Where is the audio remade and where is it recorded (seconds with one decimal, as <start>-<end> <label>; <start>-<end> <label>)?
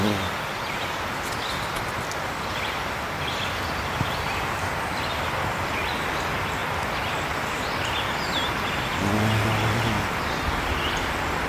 0.0-11.5 recorded